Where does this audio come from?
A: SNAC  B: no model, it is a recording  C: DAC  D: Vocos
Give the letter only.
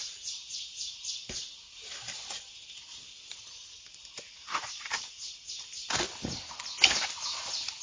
B